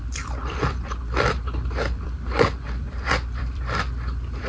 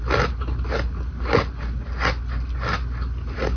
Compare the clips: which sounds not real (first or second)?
first